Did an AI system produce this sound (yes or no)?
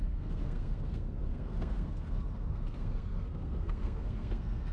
yes